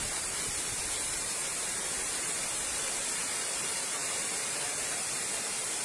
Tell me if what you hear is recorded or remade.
remade